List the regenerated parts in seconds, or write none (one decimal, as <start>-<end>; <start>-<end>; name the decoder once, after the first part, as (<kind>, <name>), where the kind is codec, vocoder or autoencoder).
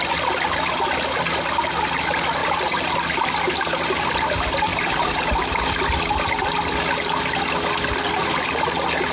2.4-2.9 (vocoder, BigVGAN v2); 4.7-5.6